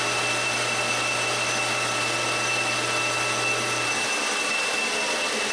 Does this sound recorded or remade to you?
recorded